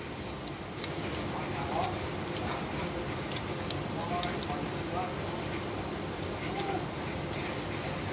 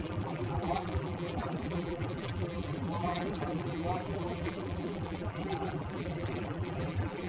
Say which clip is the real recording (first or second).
first